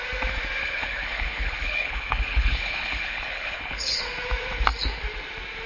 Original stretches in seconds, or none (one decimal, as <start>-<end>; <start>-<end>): 0.0-0.6; 4.0-5.7